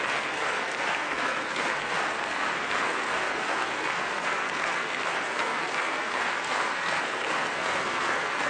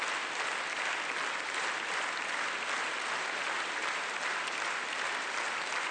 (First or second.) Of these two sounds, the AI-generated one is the first